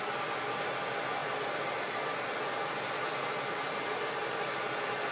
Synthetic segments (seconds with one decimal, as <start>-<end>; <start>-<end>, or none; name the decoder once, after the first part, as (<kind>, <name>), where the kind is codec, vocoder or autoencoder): none